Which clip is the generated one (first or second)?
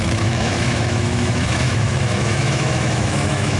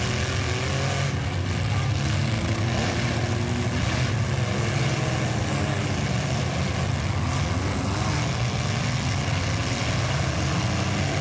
first